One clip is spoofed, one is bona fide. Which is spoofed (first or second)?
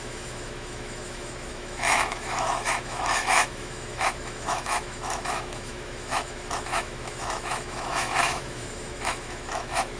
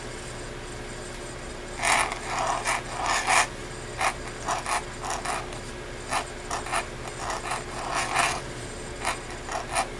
first